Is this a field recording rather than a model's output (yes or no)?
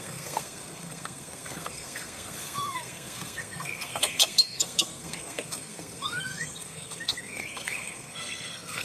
no